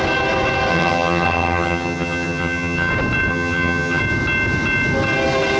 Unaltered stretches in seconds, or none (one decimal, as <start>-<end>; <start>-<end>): 0.0-0.7; 2.9-3.3; 4.0-5.6